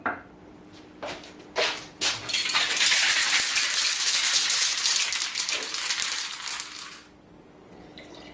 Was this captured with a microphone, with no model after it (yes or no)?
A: yes